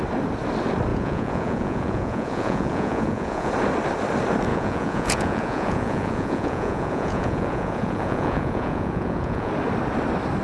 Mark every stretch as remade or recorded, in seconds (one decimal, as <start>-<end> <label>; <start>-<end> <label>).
0.0-0.9 recorded; 0.9-3.5 remade; 3.5-4.5 recorded; 4.5-9.5 remade; 9.5-10.4 recorded

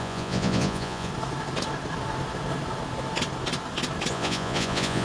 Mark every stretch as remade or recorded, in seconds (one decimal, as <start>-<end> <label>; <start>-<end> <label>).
0.0-1.1 remade; 1.1-4.1 recorded; 4.1-5.0 remade

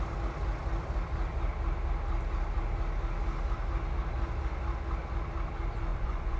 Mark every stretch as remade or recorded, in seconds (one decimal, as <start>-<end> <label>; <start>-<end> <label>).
0.0-5.9 recorded; 5.9-6.4 remade

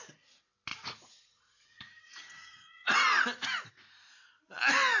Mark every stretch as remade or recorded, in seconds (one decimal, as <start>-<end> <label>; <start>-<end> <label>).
0.0-0.7 recorded; 0.7-3.7 remade; 3.7-5.0 recorded

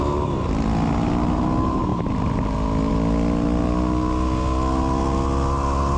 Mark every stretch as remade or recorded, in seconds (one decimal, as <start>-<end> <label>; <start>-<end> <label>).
0.0-6.0 recorded

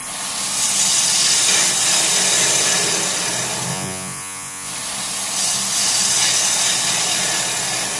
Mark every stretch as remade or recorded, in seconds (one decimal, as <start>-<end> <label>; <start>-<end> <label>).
0.0-3.7 recorded; 3.7-4.7 remade; 4.7-8.0 recorded